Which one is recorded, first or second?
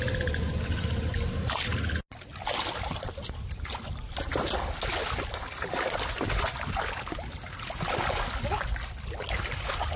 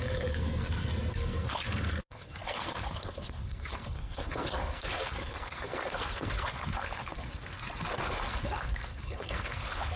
first